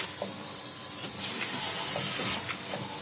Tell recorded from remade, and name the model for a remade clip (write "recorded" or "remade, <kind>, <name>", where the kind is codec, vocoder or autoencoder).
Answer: recorded